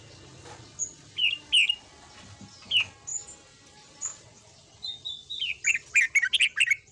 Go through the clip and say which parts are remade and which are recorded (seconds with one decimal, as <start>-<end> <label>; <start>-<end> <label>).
0.0-6.9 recorded